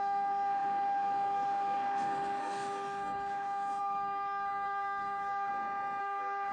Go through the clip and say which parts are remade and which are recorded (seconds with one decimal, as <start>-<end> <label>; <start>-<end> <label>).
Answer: 0.0-5.5 remade; 5.5-6.0 recorded; 6.0-6.5 remade